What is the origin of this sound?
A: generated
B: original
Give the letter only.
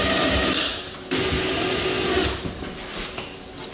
B